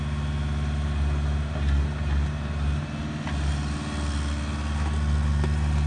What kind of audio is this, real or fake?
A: real